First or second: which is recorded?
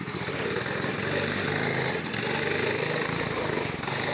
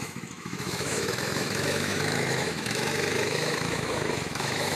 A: first